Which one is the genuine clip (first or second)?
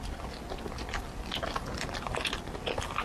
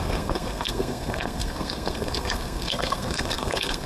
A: first